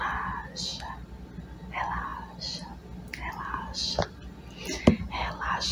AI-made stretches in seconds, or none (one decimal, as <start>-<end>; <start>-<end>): none